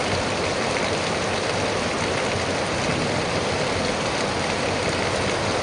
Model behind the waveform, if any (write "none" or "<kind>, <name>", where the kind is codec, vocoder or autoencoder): vocoder, BigVGAN v2